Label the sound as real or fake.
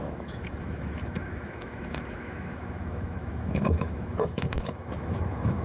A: fake